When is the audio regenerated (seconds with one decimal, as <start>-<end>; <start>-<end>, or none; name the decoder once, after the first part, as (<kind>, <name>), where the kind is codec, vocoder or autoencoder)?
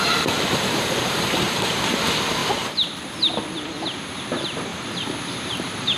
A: 0.0-2.4 (vocoder, BigVGAN v2); 4.2-4.7; 5.5-6.0